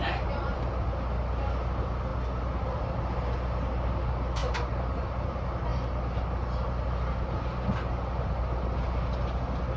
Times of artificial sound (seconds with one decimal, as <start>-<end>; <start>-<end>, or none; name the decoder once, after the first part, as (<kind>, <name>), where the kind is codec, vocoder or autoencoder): none